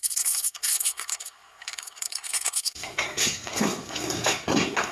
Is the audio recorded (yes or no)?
no